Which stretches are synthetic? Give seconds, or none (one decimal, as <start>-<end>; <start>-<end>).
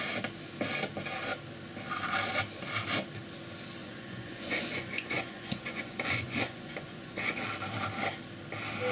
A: 3.8-7.4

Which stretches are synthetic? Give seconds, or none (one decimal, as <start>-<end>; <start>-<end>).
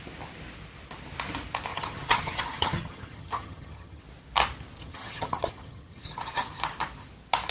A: 1.7-4.0; 4.8-6.5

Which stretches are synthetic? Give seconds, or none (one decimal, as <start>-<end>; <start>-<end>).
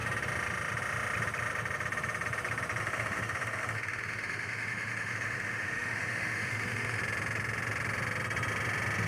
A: 2.8-7.0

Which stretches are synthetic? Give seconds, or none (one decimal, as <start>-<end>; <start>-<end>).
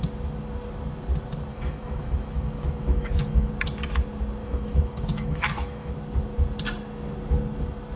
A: 1.5-3.5; 4.4-5.9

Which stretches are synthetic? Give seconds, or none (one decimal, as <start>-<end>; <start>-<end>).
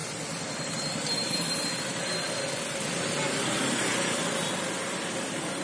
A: none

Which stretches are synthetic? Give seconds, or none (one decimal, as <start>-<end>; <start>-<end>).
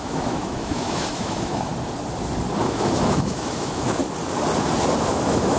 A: 0.0-1.7; 2.6-4.0; 5.1-5.6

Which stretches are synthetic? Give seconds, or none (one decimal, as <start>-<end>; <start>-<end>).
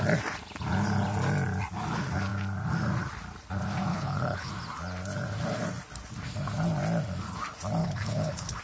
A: 3.9-4.5; 7.8-8.6